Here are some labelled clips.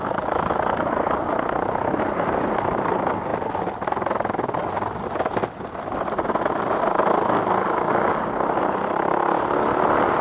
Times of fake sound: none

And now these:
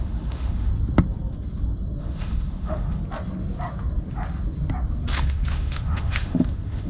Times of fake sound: 0.0-0.7 (autoencoder, DAC-VAE); 2.0-3.0; 5.1-6.9

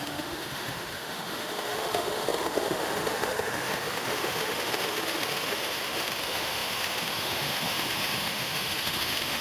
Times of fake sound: 0.0-9.4 (autoencoder, DAC-VAE)

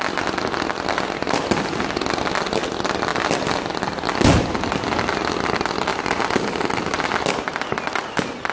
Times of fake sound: none

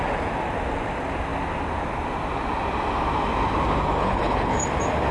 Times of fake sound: 4.0-4.6 (codec, HILCodec)

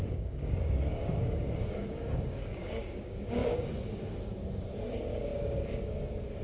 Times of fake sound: 0.0-6.4 (codec, DAC)